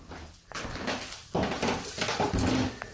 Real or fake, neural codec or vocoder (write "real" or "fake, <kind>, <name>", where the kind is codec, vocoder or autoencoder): real